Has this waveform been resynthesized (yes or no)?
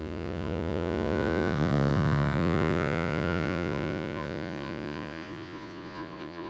yes